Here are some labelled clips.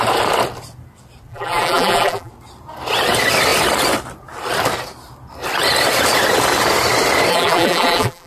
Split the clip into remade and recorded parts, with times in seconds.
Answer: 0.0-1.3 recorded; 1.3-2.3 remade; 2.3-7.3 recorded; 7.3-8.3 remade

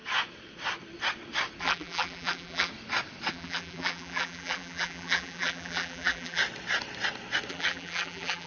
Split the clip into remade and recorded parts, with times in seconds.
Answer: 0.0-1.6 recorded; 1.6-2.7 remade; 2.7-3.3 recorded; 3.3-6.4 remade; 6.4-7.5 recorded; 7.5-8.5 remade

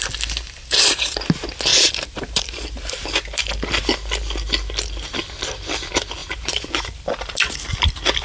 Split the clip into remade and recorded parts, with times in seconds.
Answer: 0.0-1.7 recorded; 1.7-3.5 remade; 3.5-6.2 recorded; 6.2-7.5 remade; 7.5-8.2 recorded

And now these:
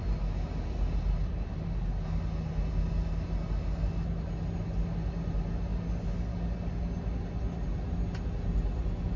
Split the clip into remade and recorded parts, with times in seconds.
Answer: 0.0-9.2 recorded